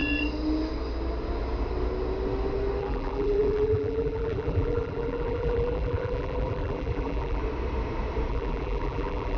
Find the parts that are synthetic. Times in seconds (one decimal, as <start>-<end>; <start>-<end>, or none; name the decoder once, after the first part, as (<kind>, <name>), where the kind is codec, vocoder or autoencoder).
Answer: 2.8-7.4 (vocoder, BigVGAN v2); 8.3-9.4